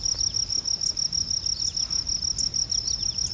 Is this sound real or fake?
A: real